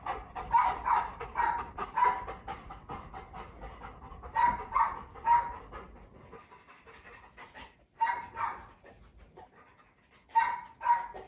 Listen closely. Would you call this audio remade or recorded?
recorded